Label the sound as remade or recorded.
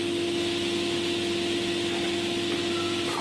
recorded